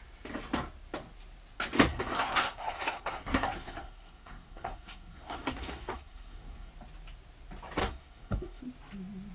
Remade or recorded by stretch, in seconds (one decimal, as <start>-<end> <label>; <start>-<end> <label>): 0.0-1.9 recorded; 1.9-6.7 remade; 6.7-7.8 recorded; 7.8-8.6 remade; 8.6-9.3 recorded